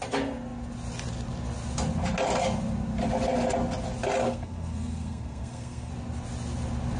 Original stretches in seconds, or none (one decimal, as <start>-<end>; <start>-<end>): 0.0-4.2; 5.9-7.0